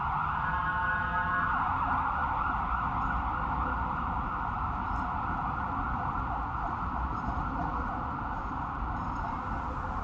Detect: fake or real real